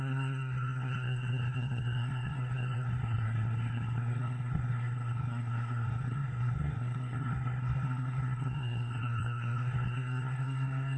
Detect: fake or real fake